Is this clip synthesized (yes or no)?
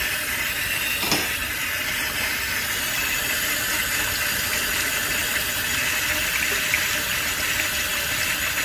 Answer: no